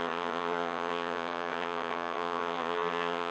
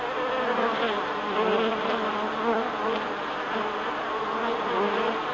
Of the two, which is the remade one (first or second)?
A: first